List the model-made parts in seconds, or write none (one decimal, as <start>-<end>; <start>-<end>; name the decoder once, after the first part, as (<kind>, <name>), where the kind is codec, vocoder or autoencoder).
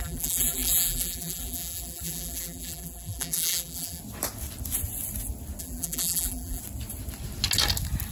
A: 0.0-4.0 (vocoder, BigVGAN v2); 5.6-6.6